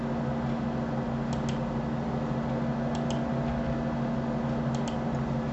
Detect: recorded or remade recorded